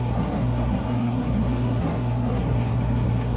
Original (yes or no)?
no